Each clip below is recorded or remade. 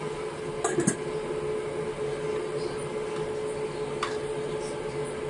recorded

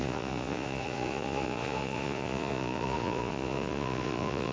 remade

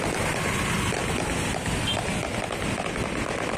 recorded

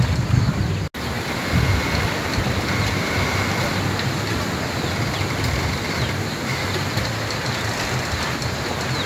recorded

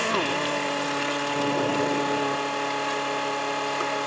recorded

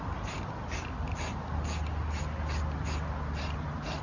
recorded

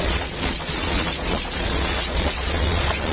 remade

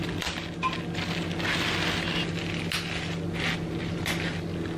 recorded